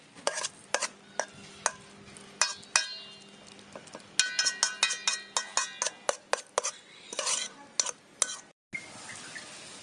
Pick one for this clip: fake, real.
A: real